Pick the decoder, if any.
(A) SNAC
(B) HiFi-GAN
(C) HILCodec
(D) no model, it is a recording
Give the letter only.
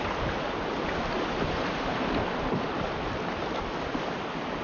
D